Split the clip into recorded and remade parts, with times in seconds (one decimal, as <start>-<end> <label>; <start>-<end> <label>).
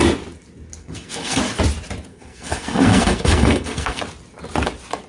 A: 0.0-0.8 recorded; 0.8-1.4 remade; 1.4-2.1 recorded; 2.1-4.0 remade; 4.0-5.1 recorded